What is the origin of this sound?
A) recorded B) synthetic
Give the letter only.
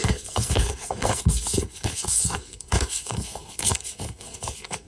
B